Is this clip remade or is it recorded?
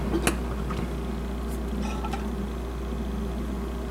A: recorded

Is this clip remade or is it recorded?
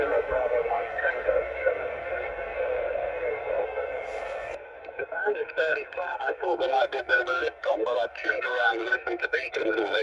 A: remade